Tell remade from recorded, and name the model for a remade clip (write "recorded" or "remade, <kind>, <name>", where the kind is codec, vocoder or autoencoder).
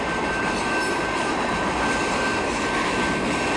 recorded